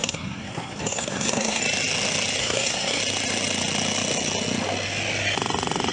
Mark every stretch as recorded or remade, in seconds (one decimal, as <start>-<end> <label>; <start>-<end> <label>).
0.0-1.6 remade; 1.6-2.4 recorded; 2.4-3.0 remade; 3.0-5.9 recorded